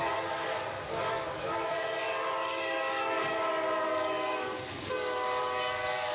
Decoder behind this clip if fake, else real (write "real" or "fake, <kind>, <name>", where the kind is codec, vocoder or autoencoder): fake, codec, DAC